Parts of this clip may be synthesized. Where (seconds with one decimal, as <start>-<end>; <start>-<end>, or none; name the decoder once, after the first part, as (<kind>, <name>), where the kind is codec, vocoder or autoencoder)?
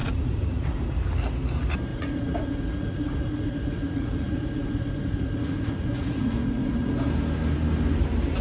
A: 0.0-0.9 (vocoder, Vocos); 1.9-6.9